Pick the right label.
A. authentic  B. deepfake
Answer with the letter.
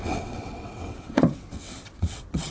B